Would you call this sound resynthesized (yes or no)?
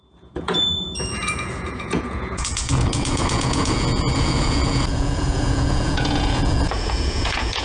yes